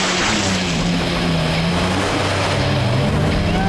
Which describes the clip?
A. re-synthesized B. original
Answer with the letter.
B